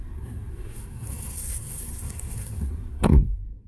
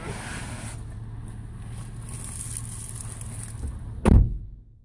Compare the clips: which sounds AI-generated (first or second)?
first